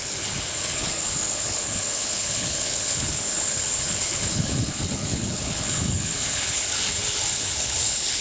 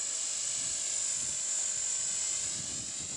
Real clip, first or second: second